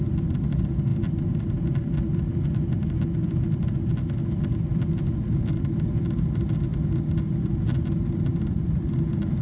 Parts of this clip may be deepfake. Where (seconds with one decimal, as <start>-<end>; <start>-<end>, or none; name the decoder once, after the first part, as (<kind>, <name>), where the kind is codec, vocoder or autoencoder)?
none